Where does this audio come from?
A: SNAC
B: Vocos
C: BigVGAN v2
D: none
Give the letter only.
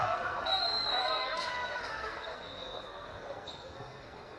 A